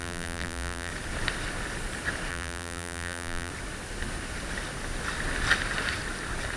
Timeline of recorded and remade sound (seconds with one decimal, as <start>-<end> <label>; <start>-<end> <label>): 0.0-0.9 remade; 0.9-2.3 recorded; 2.3-3.5 remade; 3.5-6.6 recorded

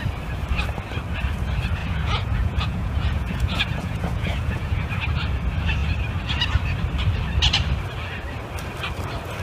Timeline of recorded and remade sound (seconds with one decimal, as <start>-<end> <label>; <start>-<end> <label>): 0.0-1.8 recorded; 1.8-4.9 remade; 4.9-9.4 recorded

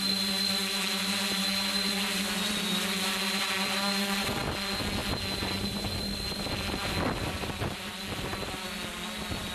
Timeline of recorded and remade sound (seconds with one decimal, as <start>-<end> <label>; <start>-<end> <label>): 0.0-9.5 recorded

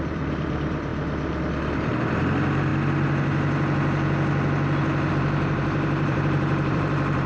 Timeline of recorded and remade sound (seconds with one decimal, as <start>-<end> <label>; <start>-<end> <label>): 0.0-0.9 remade; 0.9-2.0 recorded; 2.0-2.7 remade; 2.7-5.1 recorded; 5.1-7.3 remade

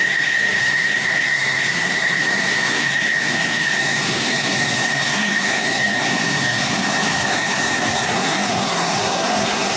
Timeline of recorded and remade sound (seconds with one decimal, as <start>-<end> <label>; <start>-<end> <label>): 0.0-9.8 remade

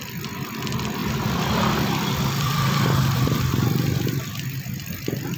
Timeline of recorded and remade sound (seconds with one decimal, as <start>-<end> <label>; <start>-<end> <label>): 0.0-1.0 recorded; 1.0-4.2 remade; 4.2-5.4 recorded